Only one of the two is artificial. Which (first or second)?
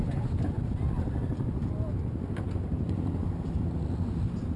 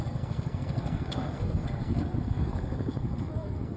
second